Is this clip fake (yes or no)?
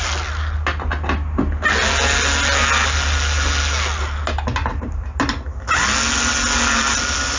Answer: no